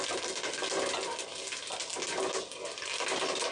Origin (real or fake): real